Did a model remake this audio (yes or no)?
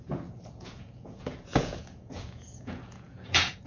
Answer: yes